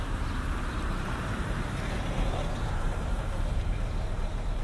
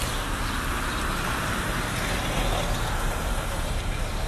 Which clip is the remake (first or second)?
first